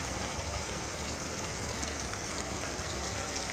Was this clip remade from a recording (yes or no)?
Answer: yes